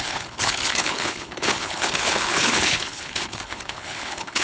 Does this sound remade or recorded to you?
remade